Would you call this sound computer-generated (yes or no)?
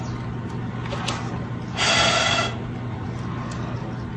no